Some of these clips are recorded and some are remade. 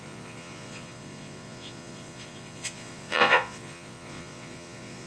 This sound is remade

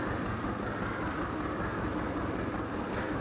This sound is recorded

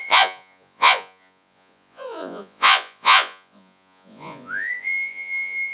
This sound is remade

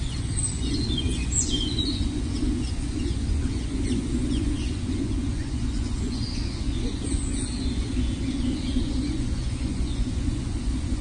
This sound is remade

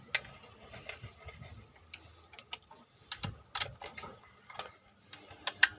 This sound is recorded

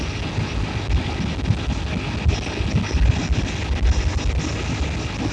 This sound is recorded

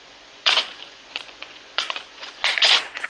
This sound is remade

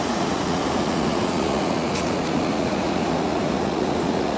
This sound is remade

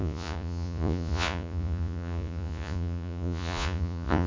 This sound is remade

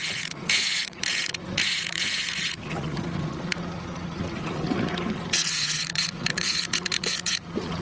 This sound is remade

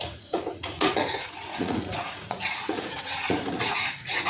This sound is remade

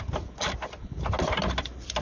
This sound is recorded